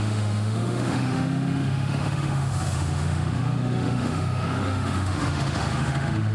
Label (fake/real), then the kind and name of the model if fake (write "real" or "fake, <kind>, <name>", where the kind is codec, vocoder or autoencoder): fake, autoencoder, DAC-VAE